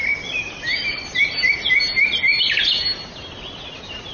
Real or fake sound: real